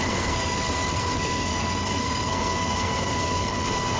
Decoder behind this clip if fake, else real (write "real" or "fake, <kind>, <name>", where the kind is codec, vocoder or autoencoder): fake, codec, SNAC